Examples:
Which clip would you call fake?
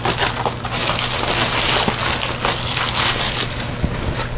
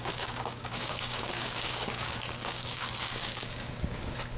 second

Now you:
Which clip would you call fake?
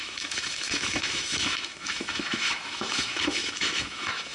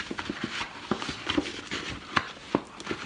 first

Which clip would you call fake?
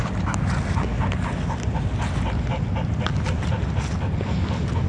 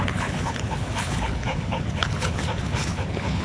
second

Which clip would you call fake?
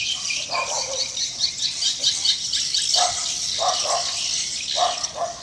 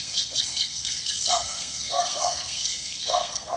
second